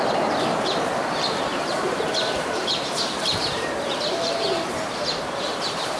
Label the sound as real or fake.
fake